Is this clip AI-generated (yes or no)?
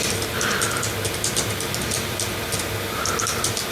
yes